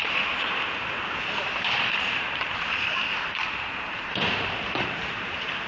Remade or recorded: remade